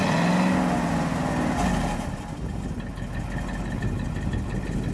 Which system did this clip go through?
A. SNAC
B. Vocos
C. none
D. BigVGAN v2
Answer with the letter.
C